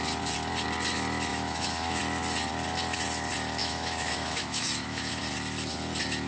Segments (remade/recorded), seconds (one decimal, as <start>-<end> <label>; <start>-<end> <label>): 0.0-1.3 recorded; 1.3-2.0 remade; 2.0-3.6 recorded; 3.6-5.2 remade; 5.2-6.3 recorded